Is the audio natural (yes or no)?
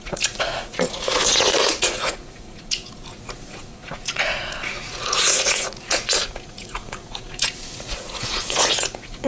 no